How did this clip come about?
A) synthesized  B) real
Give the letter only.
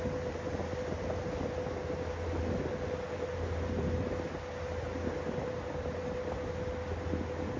B